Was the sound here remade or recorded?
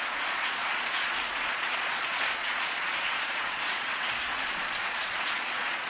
remade